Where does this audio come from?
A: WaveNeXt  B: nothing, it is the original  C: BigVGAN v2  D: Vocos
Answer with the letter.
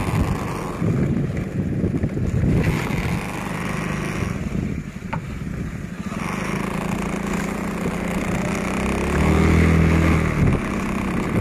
B